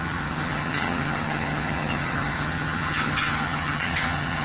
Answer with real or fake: fake